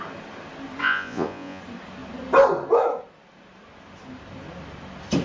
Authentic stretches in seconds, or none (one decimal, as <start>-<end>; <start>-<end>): 0.0-0.8; 1.6-5.2